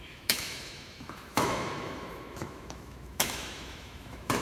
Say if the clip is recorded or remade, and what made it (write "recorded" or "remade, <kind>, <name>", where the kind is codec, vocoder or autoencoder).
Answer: remade, autoencoder, DAC-VAE